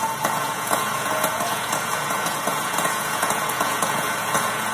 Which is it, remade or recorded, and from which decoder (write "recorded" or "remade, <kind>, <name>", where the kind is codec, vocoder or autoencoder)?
remade, vocoder, Vocos